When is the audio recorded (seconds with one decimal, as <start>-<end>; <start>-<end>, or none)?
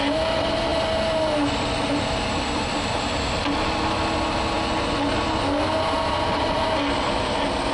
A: 0.0-7.7